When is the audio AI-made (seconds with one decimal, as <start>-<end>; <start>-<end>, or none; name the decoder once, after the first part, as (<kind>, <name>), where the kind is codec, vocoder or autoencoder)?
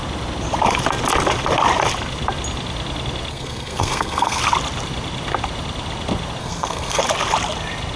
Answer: 3.3-4.4 (codec, SNAC); 6.4-7.0